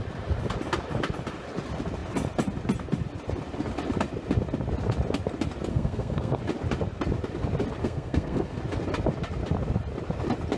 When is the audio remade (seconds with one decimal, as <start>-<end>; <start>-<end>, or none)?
5.7-6.4; 7.8-8.6